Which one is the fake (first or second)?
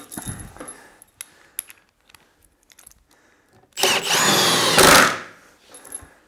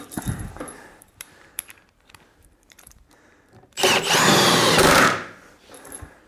second